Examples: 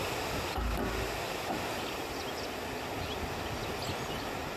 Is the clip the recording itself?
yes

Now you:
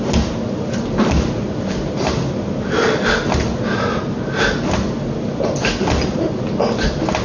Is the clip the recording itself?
yes